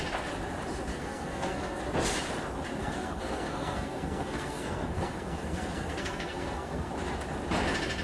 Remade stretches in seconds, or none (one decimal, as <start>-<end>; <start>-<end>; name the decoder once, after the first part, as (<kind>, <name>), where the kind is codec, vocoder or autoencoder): 0.9-1.8 (codec, SNAC); 2.8-6.9